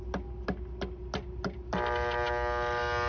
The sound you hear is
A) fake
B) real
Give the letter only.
B